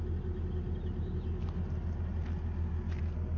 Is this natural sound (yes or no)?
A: yes